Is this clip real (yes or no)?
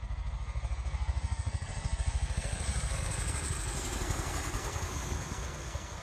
no